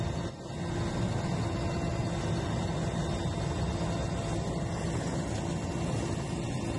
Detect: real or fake real